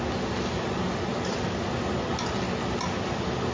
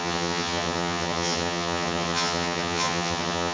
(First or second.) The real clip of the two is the first